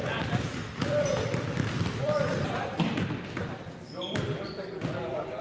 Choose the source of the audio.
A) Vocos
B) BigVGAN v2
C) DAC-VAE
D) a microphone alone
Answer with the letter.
B